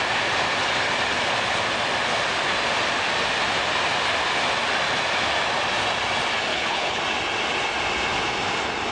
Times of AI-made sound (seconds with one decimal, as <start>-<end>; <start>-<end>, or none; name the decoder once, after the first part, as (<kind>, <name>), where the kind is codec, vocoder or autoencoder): 6.5-7.0 (codec, HILCodec)